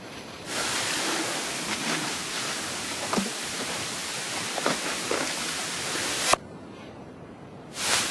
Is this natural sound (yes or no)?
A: no